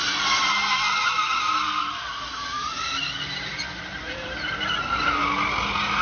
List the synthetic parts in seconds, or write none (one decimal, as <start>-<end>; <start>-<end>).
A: 0.0-0.5; 1.8-2.9; 3.5-4.7